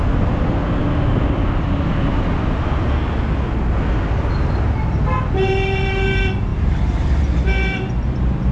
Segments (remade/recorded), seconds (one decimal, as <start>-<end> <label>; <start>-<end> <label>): 0.0-8.5 recorded

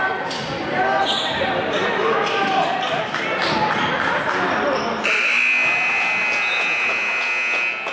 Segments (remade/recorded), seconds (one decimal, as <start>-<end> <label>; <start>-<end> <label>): 0.0-7.9 recorded

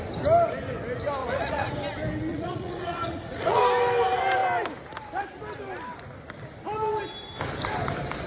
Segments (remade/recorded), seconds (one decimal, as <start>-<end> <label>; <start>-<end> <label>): 0.0-1.2 recorded; 1.2-1.7 remade; 1.7-2.3 recorded; 2.3-3.6 remade; 3.6-8.3 recorded